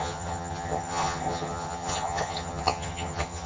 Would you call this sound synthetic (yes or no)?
yes